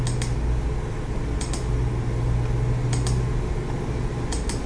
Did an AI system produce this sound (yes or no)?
no